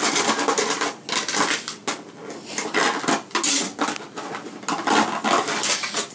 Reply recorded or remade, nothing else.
recorded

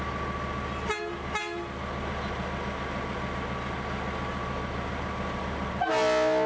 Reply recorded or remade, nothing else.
recorded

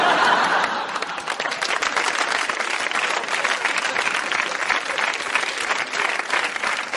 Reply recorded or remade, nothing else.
recorded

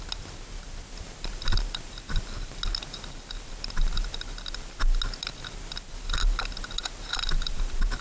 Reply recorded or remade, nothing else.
recorded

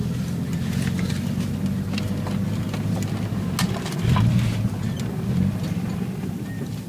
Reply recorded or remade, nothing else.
recorded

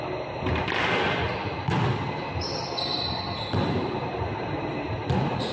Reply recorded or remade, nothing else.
recorded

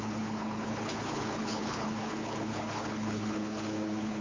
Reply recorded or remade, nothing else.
remade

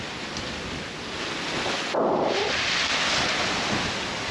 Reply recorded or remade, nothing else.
recorded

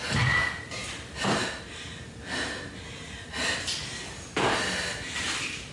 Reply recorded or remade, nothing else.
recorded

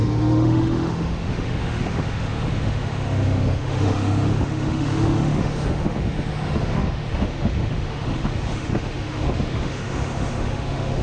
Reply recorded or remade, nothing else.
remade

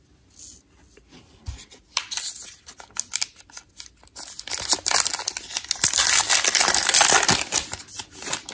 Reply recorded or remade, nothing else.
recorded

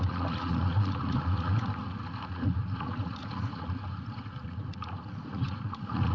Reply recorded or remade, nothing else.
remade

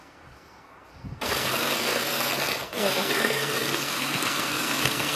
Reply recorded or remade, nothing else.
remade